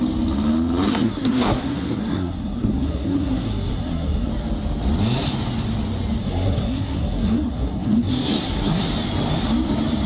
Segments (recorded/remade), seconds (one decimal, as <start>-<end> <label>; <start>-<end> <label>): 0.0-0.9 recorded; 0.9-4.3 remade; 4.3-6.2 recorded; 6.2-8.8 remade; 8.8-10.1 recorded